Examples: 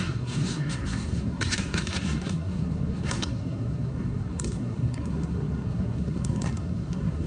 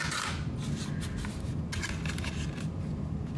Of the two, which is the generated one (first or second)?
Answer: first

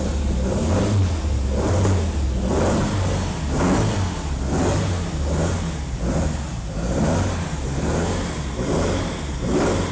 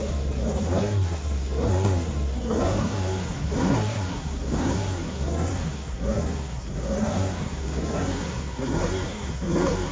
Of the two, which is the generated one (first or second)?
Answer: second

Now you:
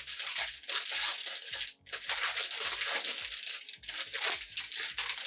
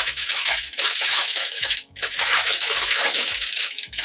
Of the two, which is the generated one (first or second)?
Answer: second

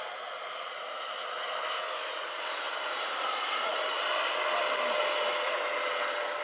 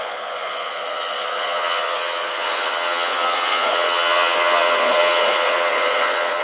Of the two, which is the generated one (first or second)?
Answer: second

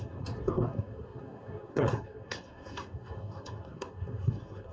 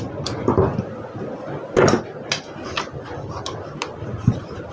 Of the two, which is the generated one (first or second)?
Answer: first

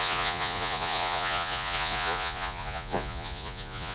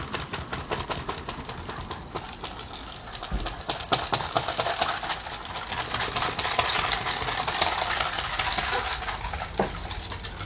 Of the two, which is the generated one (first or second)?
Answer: first